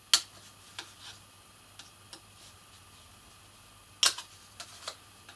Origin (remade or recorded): recorded